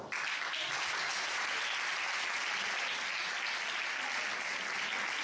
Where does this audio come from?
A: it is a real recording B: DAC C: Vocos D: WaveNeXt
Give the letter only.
A